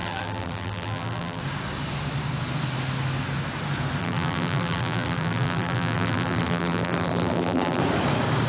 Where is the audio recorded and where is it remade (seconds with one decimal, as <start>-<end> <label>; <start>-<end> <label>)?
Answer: 0.0-1.4 remade; 1.4-4.0 recorded; 4.0-7.8 remade; 7.8-8.5 recorded

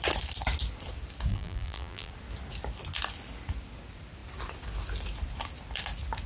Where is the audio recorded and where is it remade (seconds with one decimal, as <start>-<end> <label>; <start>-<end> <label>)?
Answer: 0.0-1.3 recorded; 1.3-2.1 remade; 2.1-6.3 recorded

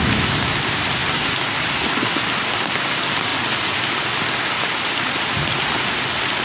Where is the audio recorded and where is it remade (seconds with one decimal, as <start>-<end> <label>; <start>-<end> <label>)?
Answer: 0.0-6.4 recorded

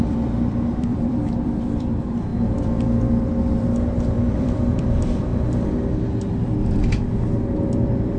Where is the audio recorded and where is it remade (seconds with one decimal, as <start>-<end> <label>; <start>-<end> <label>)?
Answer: 0.0-2.3 remade; 2.3-3.6 recorded; 3.6-5.3 remade; 5.3-7.4 recorded; 7.4-8.2 remade